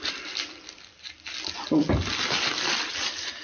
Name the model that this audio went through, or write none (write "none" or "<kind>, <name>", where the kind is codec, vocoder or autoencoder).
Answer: none